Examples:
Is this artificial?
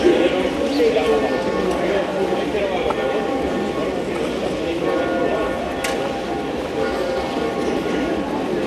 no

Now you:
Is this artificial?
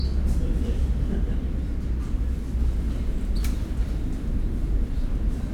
no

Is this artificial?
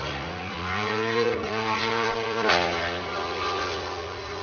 yes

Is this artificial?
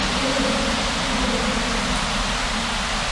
no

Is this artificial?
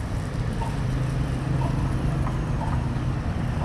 no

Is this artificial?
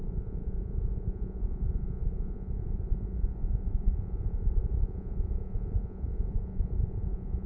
yes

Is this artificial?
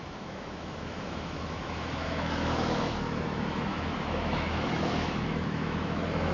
yes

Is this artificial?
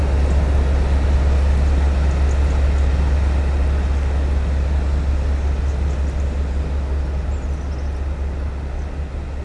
no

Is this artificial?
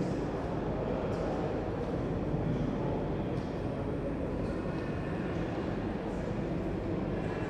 no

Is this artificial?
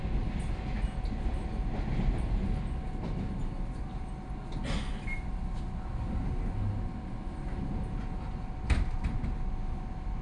no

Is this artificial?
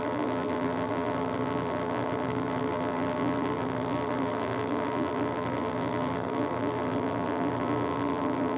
yes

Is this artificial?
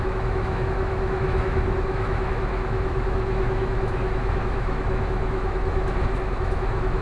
yes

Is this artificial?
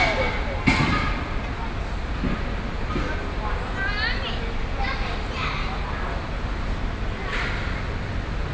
no